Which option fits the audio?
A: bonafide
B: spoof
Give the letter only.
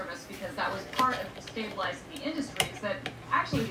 A